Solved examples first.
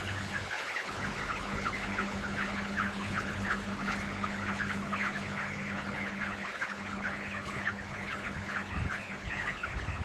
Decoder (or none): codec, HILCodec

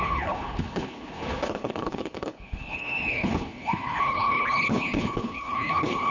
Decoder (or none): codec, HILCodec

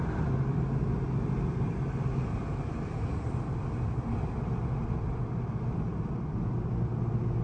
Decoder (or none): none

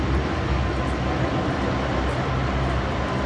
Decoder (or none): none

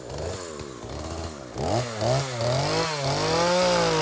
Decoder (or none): none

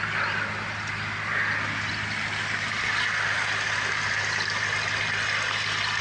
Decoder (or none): none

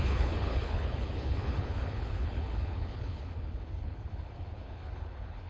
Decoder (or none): codec, HILCodec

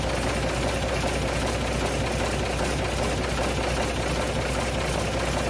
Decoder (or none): none